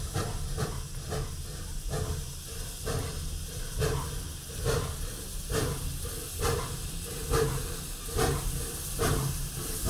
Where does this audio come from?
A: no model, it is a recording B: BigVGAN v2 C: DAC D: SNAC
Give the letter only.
A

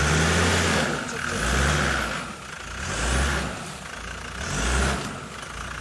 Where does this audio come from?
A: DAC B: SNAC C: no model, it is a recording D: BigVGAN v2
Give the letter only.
C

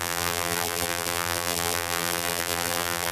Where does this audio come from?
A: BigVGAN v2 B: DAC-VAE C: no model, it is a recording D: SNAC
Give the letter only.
A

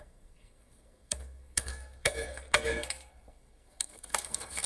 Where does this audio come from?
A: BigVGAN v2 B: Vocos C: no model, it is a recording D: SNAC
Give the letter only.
D